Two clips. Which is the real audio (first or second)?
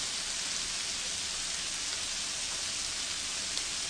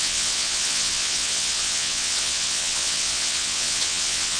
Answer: first